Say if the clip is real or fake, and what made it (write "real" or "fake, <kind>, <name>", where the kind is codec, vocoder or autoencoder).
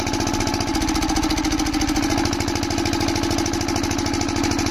real